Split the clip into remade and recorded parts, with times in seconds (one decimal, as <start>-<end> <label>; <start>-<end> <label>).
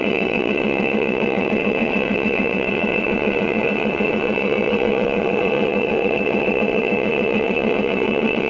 0.0-8.5 remade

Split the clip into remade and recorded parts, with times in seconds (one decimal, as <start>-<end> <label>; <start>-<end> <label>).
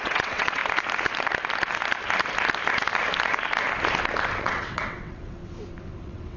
0.0-0.6 remade; 0.6-4.4 recorded; 4.4-5.4 remade; 5.4-6.0 recorded; 6.0-6.4 remade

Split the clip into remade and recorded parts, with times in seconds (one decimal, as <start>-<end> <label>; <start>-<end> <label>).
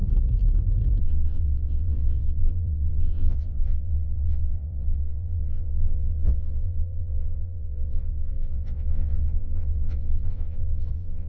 0.0-1.0 recorded; 1.0-11.3 remade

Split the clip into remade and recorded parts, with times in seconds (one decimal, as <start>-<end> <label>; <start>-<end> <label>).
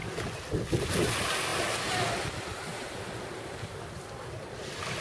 0.0-5.0 recorded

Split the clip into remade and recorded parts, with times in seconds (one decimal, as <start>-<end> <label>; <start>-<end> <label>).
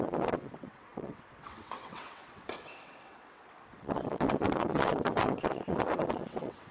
0.0-6.7 remade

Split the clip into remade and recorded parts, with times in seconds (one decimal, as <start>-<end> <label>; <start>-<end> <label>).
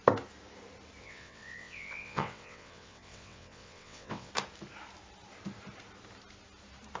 0.0-1.0 recorded; 1.0-4.3 remade; 4.3-7.0 recorded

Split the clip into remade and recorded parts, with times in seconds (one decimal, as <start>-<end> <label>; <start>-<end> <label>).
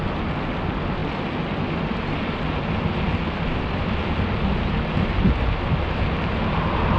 0.0-7.0 recorded